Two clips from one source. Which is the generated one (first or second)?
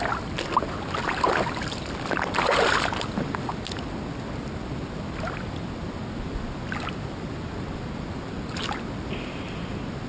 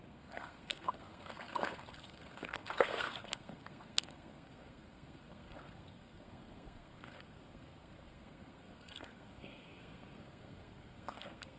second